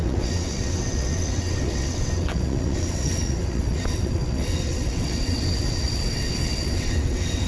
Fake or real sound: fake